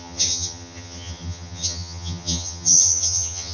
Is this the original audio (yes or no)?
no